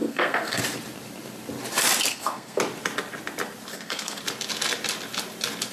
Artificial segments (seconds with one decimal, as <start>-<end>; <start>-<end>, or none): 0.0-0.6; 2.1-2.6; 3.7-4.2